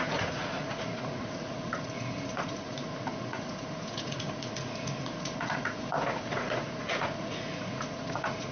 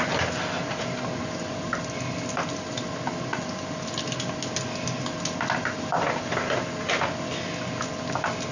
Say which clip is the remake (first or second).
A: first